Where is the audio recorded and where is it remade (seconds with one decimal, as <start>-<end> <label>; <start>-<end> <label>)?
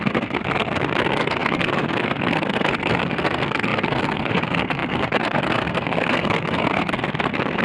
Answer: 0.0-7.6 remade